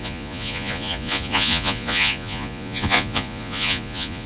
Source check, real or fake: fake